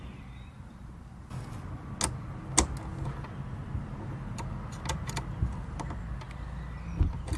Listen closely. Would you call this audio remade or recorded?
recorded